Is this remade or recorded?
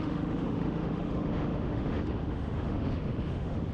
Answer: remade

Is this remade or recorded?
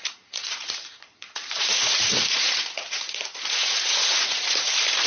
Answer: remade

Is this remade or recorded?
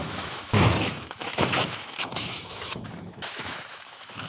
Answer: remade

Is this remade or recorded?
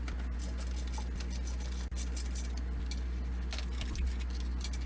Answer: recorded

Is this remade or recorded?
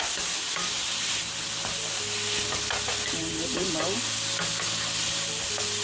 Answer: recorded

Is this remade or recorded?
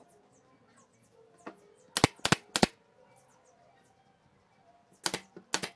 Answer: recorded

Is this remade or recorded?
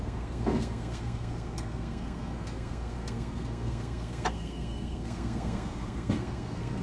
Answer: remade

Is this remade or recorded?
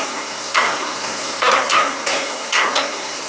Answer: remade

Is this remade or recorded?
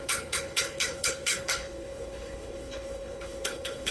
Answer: remade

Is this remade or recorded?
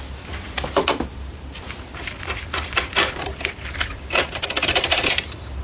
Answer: recorded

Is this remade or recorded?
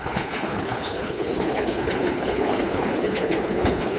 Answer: remade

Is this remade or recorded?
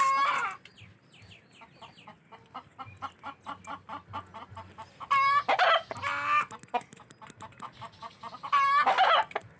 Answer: recorded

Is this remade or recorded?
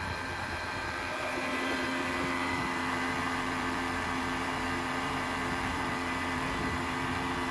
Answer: remade